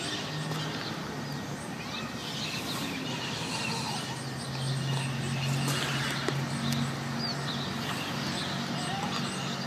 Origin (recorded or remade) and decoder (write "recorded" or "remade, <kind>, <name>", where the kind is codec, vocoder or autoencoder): recorded